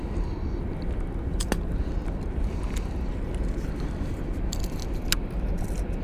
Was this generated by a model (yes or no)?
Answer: no